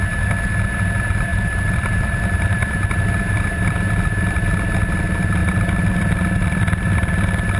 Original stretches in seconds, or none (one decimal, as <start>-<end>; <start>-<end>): 0.0-1.3; 2.7-5.4; 5.9-7.6